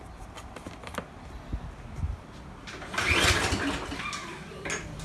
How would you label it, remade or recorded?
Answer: recorded